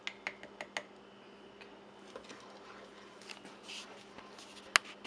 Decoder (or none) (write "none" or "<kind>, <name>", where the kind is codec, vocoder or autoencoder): none